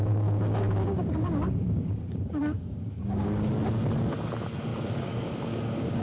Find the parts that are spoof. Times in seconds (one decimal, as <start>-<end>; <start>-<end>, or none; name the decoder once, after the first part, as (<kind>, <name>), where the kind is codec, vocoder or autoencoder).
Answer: 0.0-3.6 (codec, DAC); 4.7-6.0